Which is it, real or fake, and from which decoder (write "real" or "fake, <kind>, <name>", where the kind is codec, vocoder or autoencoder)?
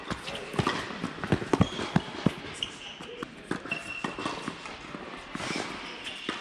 real